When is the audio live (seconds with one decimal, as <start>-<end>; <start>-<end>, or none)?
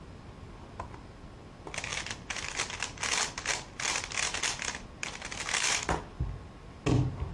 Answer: 0.0-7.3